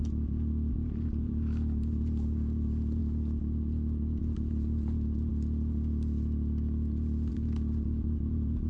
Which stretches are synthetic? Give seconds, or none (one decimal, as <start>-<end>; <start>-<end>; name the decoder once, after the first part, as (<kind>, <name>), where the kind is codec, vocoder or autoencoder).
0.7-3.0 (vocoder, BigVGAN v2); 4.2-5.3; 7.3-8.7